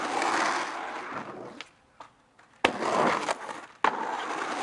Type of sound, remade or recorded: recorded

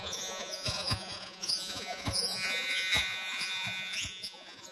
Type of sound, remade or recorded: remade